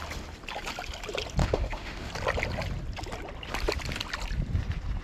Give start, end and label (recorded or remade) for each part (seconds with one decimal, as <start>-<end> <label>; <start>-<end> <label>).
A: 0.0-1.4 recorded; 1.4-2.1 remade; 2.1-5.0 recorded